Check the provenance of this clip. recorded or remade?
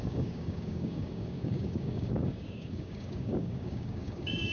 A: remade